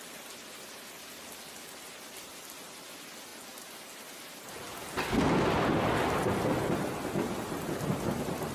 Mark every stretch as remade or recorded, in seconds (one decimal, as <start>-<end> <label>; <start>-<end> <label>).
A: 0.0-8.5 recorded